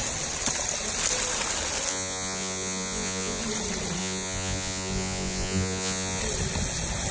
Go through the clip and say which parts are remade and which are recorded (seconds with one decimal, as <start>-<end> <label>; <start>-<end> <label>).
0.0-1.9 recorded; 1.9-3.4 remade; 3.4-4.0 recorded; 4.0-6.2 remade; 6.2-7.1 recorded